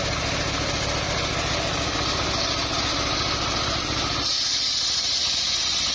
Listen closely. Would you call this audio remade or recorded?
recorded